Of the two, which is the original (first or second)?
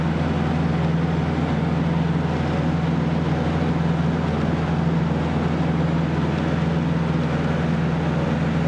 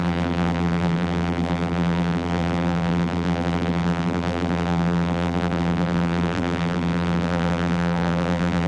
first